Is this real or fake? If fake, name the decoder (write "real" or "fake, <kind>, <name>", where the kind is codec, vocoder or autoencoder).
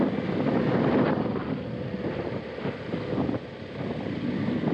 real